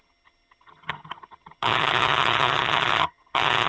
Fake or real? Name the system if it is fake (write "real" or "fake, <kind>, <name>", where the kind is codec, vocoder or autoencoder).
fake, vocoder, HiFi-GAN